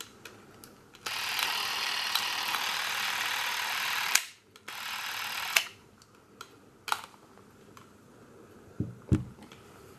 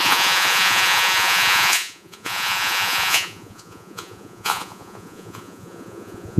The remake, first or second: second